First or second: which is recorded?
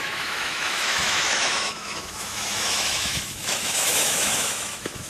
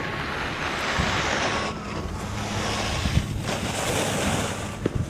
second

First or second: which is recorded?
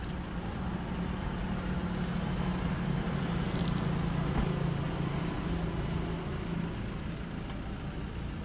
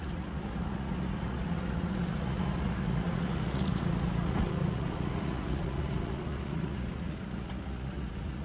first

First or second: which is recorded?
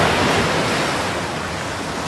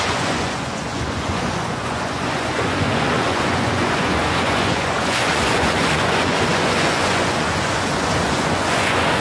first